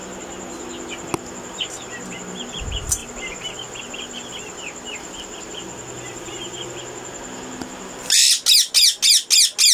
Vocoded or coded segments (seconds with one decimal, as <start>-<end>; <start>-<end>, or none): 3.0-6.7